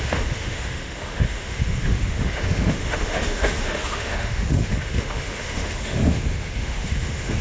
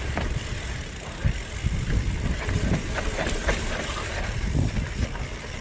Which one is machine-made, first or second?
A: first